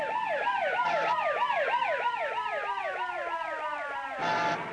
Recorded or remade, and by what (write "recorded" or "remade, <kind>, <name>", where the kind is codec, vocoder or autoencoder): recorded